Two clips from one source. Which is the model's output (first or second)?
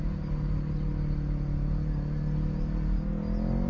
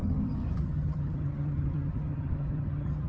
second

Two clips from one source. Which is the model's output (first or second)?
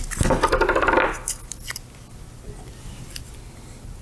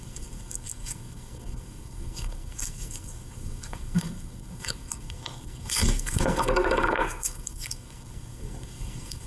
second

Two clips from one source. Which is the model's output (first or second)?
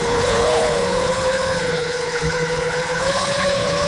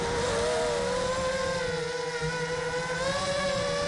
first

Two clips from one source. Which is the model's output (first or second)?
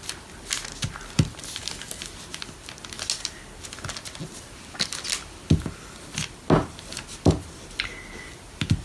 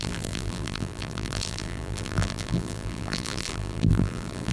second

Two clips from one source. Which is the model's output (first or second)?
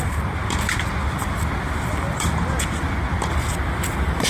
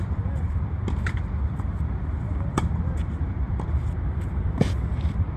second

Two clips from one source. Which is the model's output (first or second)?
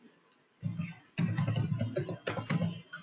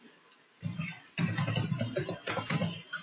second